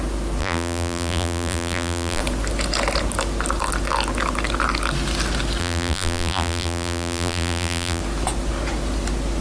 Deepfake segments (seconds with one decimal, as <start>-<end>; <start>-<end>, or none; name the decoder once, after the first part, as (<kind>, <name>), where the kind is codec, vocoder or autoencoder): 0.4-2.2 (vocoder, BigVGAN v2); 5.6-8.0